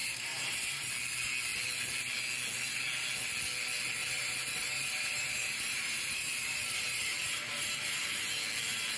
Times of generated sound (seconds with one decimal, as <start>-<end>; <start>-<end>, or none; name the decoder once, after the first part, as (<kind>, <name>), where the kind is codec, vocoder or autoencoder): 0.0-0.9 (vocoder, BigVGAN v2); 4.0-8.2